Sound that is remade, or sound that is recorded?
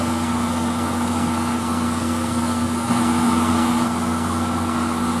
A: remade